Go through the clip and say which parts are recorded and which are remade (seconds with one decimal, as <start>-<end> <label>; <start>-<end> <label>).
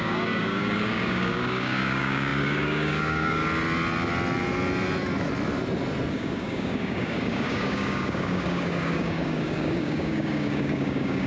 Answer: 0.0-3.4 remade; 3.4-6.1 recorded; 6.1-11.3 remade